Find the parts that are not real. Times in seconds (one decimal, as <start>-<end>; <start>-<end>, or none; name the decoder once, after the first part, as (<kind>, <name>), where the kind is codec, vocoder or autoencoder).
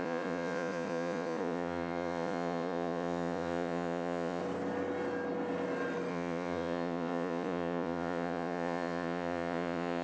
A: 0.0-4.4 (vocoder, Vocos); 6.1-10.0